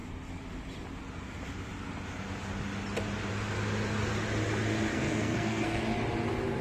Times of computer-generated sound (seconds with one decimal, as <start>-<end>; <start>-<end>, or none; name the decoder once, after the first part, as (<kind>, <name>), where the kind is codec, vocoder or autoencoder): 4.9-5.8 (codec, SNAC)